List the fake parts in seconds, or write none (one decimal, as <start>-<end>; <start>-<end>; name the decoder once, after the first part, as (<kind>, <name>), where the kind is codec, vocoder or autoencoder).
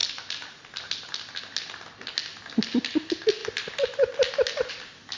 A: none